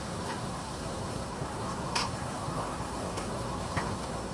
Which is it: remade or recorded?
remade